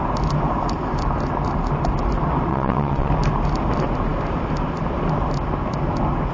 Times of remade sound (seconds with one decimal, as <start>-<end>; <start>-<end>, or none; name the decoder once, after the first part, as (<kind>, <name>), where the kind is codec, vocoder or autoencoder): 2.5-3.1 (vocoder, WaveNeXt)